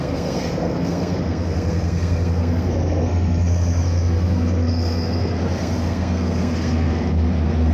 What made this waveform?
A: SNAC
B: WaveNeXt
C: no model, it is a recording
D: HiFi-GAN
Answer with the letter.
A